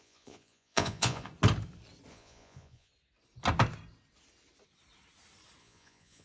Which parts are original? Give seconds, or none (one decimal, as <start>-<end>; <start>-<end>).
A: 1.3-2.1; 2.9-5.6